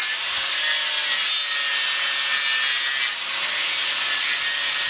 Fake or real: real